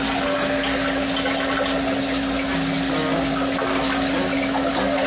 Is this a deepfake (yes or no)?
no